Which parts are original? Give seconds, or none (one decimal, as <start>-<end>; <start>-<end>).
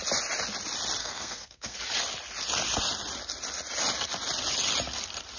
0.0-1.0; 1.8-5.4